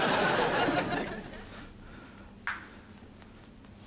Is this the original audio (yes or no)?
yes